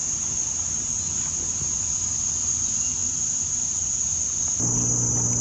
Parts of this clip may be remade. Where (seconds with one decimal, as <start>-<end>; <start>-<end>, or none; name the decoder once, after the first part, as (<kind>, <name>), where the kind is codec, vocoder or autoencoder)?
none